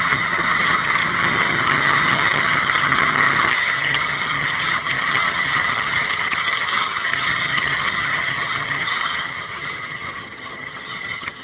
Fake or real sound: fake